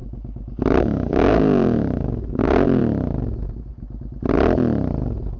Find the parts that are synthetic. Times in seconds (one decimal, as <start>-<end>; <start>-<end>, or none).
0.8-2.8